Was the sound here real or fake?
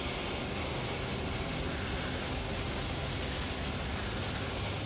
real